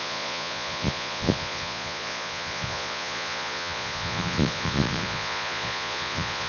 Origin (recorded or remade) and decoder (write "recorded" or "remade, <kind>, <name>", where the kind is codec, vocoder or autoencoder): remade, vocoder, Vocos